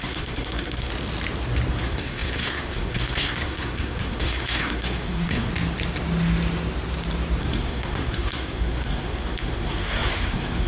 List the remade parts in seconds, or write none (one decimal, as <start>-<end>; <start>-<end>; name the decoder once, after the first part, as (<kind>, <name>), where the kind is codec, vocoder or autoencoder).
0.0-0.9 (codec, SNAC); 1.7-5.5; 7.4-10.7